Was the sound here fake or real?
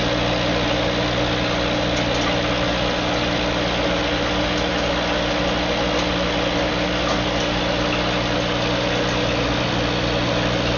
real